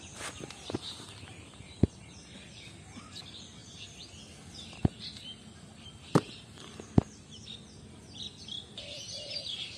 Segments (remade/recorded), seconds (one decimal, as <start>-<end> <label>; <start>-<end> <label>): 0.0-9.8 recorded